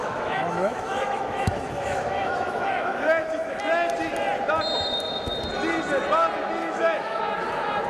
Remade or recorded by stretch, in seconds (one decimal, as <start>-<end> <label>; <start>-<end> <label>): 0.0-3.6 remade; 3.6-6.6 recorded; 6.6-7.2 remade; 7.2-7.9 recorded